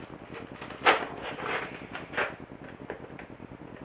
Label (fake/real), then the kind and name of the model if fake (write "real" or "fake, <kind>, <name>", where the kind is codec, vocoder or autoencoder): real